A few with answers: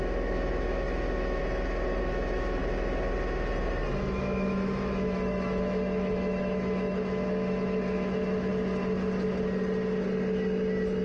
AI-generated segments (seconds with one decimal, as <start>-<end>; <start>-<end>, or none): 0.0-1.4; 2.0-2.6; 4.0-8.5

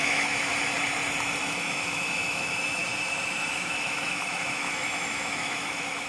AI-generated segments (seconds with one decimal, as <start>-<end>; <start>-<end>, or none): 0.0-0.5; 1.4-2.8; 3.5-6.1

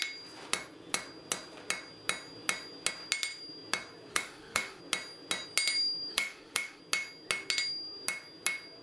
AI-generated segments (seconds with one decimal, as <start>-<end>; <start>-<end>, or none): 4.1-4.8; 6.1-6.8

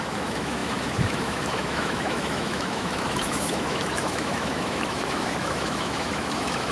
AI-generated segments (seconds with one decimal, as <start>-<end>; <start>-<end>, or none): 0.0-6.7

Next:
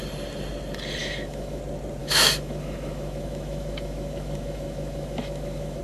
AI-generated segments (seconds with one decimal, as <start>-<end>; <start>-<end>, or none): 1.0-1.6; 2.0-5.8

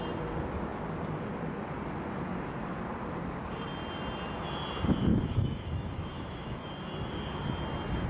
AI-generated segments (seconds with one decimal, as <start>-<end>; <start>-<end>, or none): 5.1-6.7

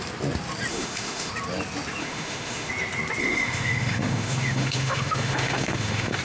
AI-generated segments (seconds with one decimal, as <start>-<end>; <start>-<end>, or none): 0.7-1.3; 2.0-2.7; 3.2-6.2